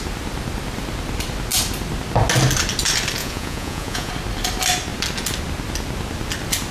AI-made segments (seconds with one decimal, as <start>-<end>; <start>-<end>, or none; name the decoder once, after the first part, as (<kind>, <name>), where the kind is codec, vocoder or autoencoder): 3.2-4.1 (vocoder, Vocos)